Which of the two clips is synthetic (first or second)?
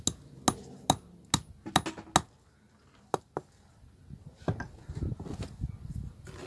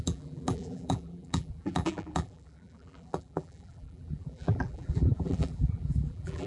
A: second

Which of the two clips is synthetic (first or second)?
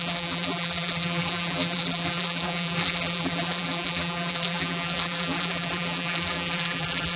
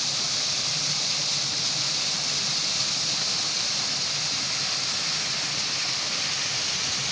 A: first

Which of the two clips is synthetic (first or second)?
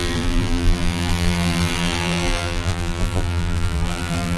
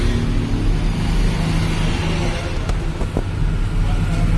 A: first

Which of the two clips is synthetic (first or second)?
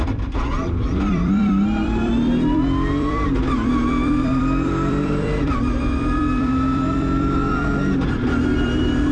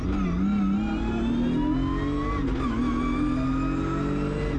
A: first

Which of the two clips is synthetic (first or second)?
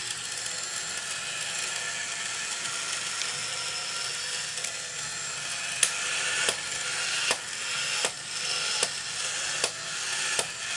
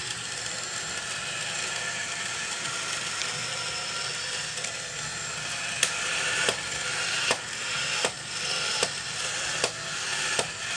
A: second